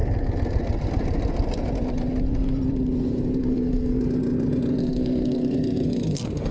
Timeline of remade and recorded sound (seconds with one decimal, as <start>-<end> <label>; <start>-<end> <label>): 0.0-3.5 recorded; 3.5-4.0 remade; 4.0-4.8 recorded; 4.8-6.5 remade